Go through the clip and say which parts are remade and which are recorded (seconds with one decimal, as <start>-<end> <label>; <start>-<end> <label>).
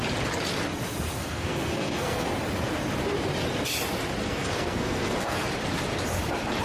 0.0-1.2 recorded; 1.2-2.3 remade; 2.3-4.2 recorded; 4.2-5.5 remade; 5.5-6.6 recorded